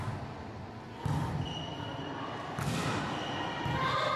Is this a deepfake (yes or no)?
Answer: no